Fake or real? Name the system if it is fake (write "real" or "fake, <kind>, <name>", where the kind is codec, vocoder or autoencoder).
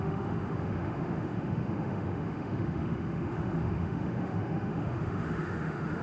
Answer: fake, autoencoder, DAC-VAE